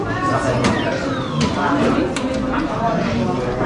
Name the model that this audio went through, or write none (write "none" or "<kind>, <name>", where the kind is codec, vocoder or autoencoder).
none